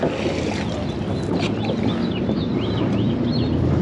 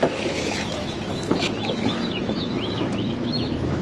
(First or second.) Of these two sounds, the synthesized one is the second